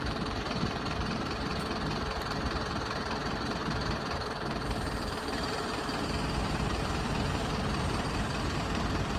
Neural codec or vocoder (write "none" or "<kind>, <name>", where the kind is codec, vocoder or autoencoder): vocoder, BigVGAN v2